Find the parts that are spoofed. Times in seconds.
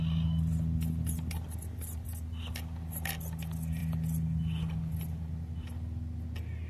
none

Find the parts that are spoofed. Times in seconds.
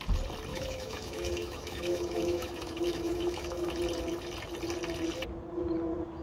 0.5-3.7 (autoencoder, DAC-VAE)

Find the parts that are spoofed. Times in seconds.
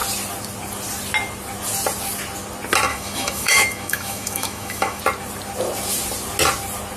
2.9-5.0 (autoencoder, DAC-VAE)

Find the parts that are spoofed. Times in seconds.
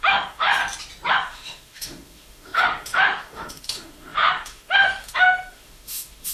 0.0-0.6 (autoencoder, DAC-VAE); 1.1-6.3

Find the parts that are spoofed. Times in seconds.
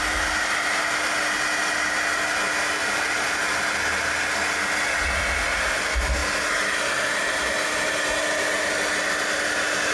none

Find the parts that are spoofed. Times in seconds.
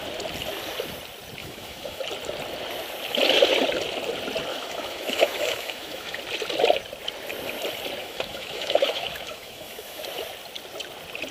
1.4-2.0 (autoencoder, DAC-VAE); 4.5-6.2; 8.0-10.0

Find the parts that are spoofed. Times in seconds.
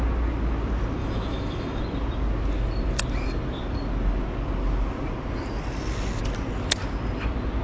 1.0-1.8 (autoencoder, DAC-VAE)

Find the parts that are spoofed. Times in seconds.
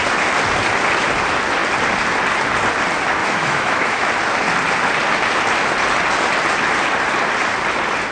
3.2-4.1 (autoencoder, DAC-VAE)